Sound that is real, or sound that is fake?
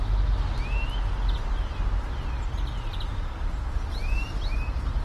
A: real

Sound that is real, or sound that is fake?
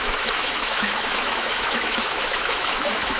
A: fake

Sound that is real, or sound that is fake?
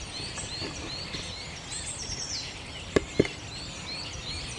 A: real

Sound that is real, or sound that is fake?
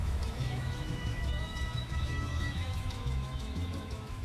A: fake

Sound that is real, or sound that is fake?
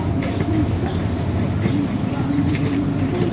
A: fake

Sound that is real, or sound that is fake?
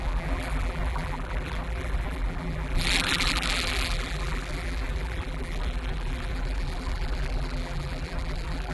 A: fake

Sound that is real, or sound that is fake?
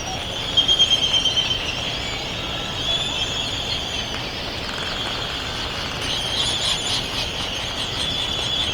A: real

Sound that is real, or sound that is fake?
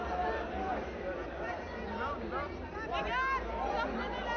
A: real